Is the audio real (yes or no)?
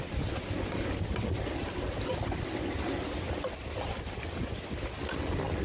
yes